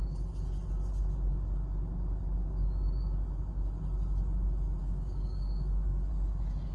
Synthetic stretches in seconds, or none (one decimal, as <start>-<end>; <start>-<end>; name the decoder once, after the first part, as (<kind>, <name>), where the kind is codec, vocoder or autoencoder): 4.8-6.1 (codec, DAC)